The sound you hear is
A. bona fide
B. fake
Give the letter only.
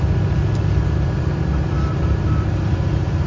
B